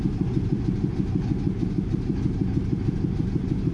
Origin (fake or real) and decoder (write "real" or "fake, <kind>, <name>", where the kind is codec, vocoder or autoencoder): fake, vocoder, BigVGAN v2